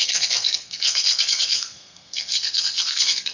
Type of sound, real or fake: fake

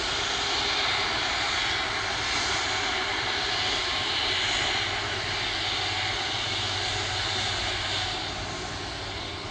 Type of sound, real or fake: real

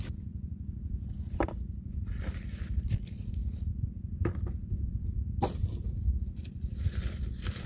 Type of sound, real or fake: fake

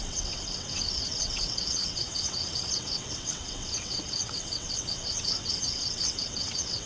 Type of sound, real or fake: fake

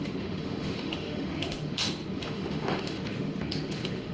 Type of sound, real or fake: fake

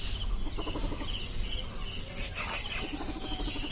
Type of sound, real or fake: real